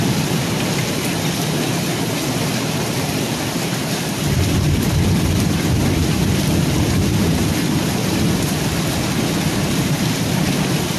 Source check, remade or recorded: recorded